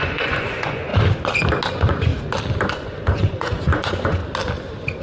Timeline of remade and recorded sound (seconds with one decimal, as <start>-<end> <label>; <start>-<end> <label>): 0.0-0.9 remade; 0.9-1.7 recorded; 1.7-2.1 remade; 2.1-2.7 recorded; 2.7-4.2 remade; 4.2-5.0 recorded